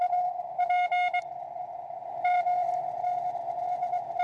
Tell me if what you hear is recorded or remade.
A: recorded